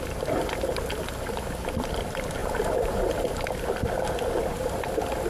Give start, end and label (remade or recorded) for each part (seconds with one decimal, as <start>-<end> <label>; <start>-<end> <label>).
0.0-5.3 recorded